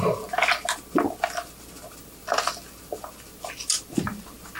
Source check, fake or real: real